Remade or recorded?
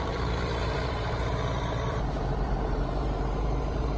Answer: remade